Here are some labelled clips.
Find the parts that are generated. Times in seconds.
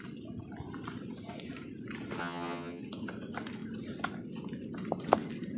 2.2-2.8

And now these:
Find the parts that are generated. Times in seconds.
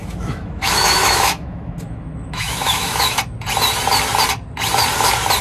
0.0-3.2